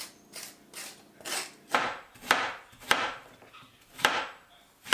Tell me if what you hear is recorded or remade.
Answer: recorded